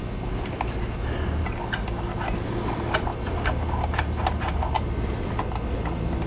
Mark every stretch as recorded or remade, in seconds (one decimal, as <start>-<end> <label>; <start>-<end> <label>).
0.0-6.3 recorded

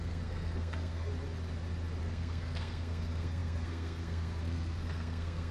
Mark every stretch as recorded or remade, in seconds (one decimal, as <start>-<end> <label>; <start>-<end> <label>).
0.0-1.1 remade; 1.1-2.0 recorded; 2.0-5.5 remade

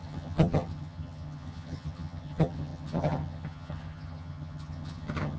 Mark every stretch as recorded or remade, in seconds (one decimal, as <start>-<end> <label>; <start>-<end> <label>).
0.0-5.4 remade